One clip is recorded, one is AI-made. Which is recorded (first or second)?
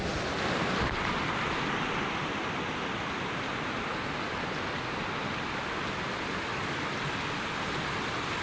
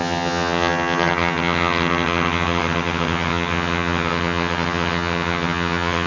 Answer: first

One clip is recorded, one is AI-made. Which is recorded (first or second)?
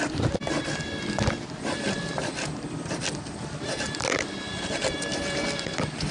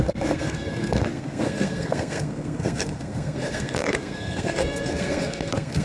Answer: first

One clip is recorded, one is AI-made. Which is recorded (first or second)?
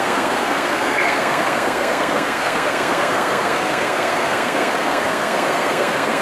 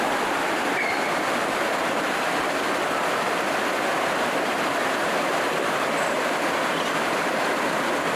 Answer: second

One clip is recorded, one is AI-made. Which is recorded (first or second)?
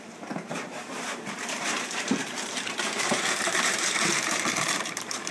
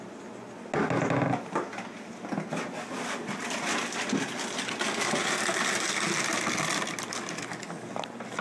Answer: second